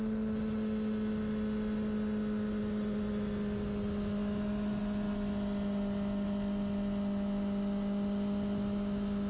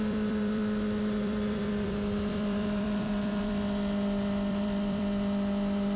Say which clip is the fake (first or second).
second